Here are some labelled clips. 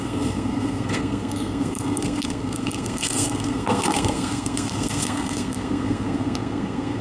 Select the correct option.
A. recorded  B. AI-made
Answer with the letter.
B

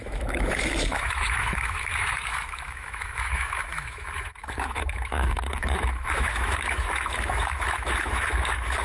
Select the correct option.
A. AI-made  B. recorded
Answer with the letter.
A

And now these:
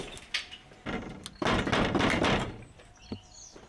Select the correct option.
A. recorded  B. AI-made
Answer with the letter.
A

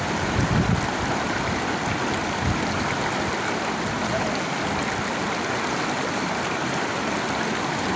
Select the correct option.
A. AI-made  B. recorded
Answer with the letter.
B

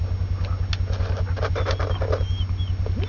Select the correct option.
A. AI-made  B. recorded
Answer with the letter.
B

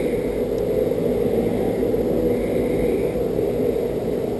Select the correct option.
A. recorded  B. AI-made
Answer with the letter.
A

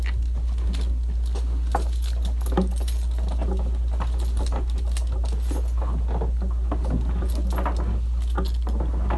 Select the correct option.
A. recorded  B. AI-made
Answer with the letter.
A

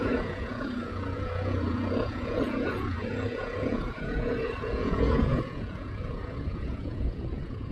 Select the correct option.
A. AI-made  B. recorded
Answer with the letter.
A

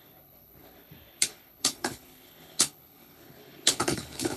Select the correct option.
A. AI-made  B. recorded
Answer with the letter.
A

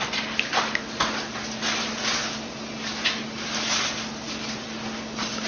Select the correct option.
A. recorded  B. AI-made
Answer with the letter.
A